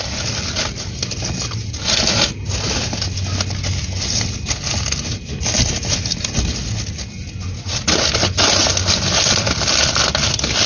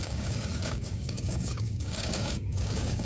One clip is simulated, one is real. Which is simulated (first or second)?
second